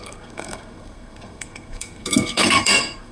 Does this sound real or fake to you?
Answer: fake